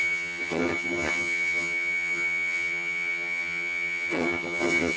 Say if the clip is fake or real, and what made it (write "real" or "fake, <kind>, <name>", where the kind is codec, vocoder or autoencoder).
fake, vocoder, HiFi-GAN